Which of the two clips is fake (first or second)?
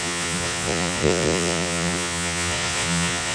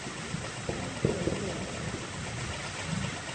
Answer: first